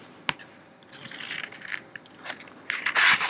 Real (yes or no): yes